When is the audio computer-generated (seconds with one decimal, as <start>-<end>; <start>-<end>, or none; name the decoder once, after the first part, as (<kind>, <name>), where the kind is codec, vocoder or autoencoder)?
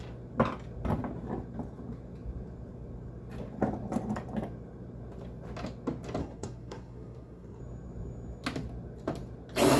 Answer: 6.2-7.6 (codec, SNAC)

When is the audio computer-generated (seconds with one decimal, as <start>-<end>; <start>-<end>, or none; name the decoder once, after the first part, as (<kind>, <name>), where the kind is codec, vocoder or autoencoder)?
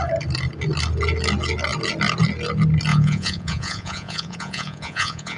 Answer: 2.9-5.4 (vocoder, Vocos)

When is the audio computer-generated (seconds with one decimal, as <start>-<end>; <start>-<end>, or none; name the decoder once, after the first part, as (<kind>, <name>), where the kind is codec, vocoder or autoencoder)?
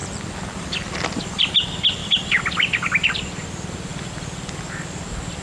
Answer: none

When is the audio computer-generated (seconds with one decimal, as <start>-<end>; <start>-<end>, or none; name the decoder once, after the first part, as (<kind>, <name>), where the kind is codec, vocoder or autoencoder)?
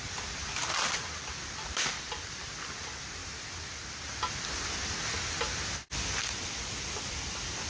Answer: 0.0-3.2 (vocoder, BigVGAN v2); 6.5-7.7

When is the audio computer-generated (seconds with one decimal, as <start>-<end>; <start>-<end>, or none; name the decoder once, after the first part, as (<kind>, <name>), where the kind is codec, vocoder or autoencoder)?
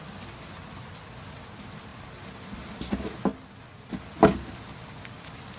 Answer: none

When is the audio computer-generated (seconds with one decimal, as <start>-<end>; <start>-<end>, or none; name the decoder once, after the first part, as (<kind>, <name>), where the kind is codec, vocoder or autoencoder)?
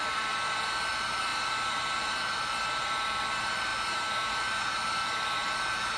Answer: 0.0-3.7 (vocoder, BigVGAN v2); 4.3-6.0